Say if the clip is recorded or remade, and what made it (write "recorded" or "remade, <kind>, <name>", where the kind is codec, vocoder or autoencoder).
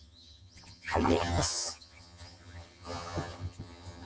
remade, vocoder, HiFi-GAN